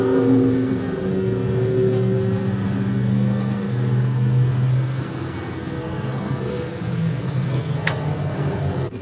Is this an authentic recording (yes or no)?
no